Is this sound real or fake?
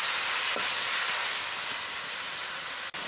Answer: real